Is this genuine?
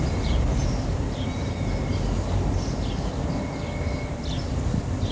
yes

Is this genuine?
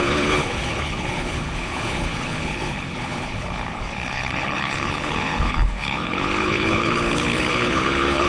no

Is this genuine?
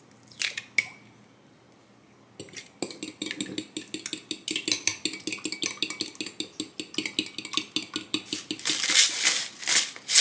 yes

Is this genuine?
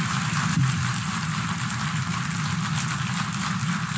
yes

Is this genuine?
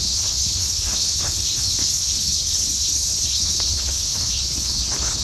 no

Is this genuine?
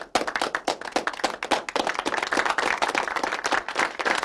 yes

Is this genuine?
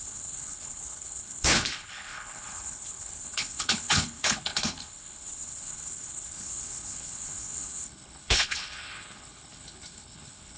no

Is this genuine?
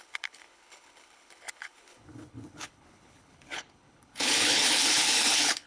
no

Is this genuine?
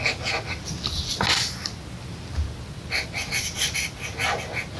yes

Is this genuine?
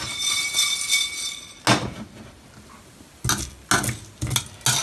yes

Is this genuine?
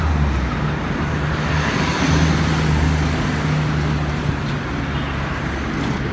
yes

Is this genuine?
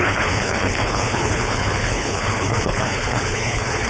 no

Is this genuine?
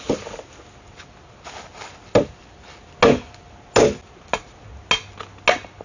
yes